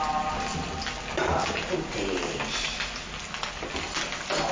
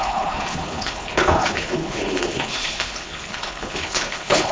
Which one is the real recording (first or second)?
first